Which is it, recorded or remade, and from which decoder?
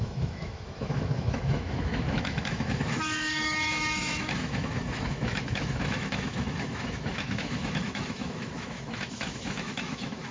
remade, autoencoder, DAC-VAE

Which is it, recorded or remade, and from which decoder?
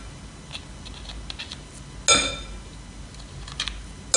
recorded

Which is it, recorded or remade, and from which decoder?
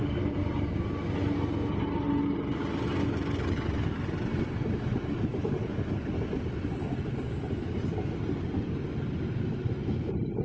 recorded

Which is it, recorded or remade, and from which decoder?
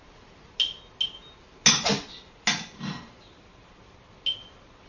recorded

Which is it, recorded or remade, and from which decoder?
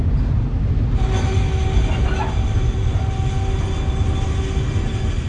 recorded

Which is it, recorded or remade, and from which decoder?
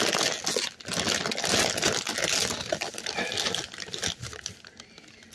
recorded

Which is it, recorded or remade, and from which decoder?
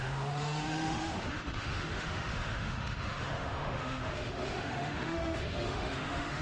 remade, autoencoder, DAC-VAE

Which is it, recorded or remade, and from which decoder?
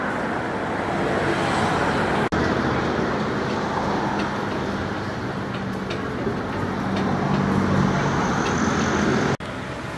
recorded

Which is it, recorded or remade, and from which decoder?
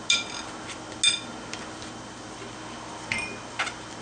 recorded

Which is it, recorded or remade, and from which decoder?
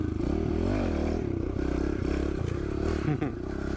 recorded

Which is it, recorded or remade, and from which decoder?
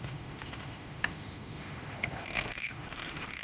remade, autoencoder, DAC-VAE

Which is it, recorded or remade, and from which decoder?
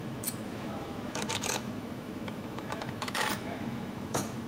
remade, autoencoder, DAC-VAE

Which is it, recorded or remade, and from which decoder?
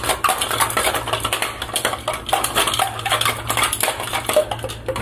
recorded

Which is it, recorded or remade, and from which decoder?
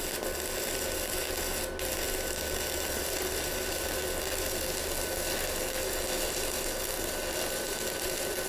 recorded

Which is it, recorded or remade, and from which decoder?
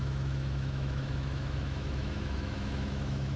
remade, autoencoder, DAC-VAE